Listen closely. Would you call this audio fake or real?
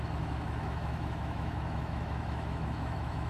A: fake